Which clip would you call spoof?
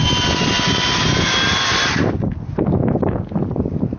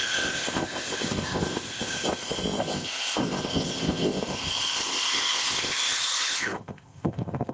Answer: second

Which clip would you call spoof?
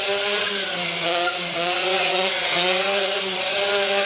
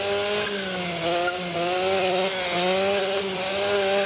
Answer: first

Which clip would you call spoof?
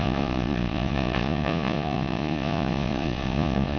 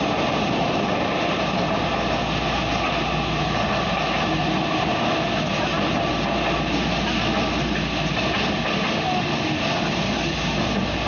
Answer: first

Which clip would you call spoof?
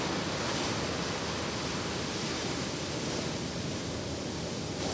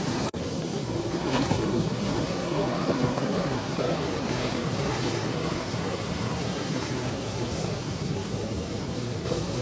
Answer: second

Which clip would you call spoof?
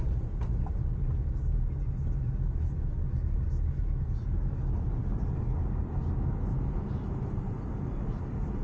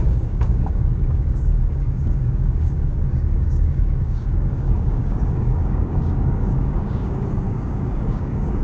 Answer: second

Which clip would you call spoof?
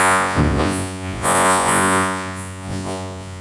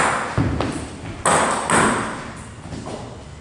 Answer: first